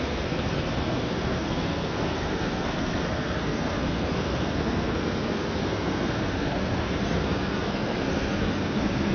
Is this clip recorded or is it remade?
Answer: remade